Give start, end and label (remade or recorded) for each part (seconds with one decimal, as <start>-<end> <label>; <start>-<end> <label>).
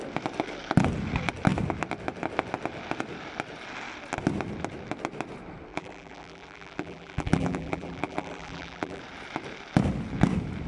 0.0-5.7 recorded; 5.7-9.0 remade; 9.0-10.7 recorded